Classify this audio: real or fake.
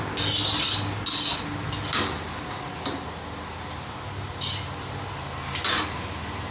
real